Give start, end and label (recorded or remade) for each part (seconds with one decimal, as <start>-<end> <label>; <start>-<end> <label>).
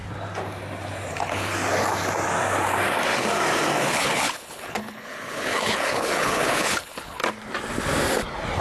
0.0-1.1 recorded; 1.1-1.5 remade; 1.5-3.9 recorded; 3.9-7.2 remade; 7.2-8.6 recorded